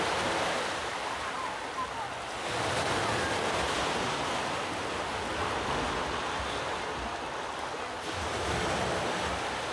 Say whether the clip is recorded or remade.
recorded